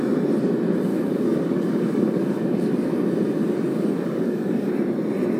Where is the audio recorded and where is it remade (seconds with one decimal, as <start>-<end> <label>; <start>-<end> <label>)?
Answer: 0.0-0.9 recorded; 0.9-2.9 remade; 2.9-3.7 recorded; 3.7-4.7 remade; 4.7-5.4 recorded